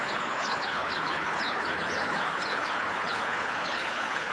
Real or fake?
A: fake